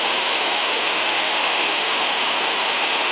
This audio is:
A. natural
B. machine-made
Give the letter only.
B